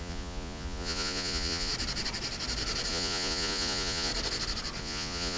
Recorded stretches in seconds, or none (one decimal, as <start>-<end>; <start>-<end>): 1.7-2.9; 4.1-4.8